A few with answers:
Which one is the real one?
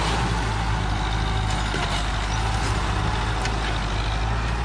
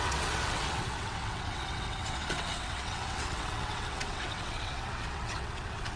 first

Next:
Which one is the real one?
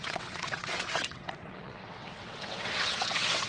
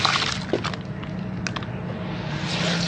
second